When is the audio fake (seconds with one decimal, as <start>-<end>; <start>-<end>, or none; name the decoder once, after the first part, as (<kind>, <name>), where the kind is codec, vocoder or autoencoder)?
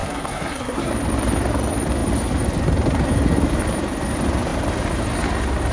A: 0.0-0.9 (codec, SNAC)